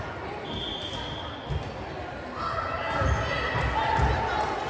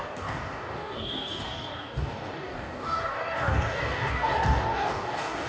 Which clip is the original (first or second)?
first